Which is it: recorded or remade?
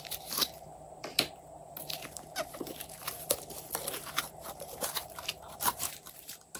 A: remade